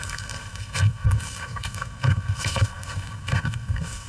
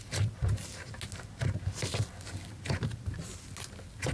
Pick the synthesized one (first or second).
first